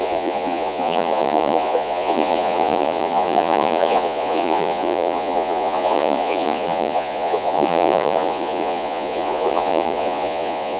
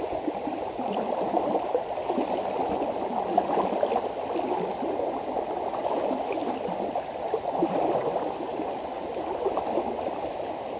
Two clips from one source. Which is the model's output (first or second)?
first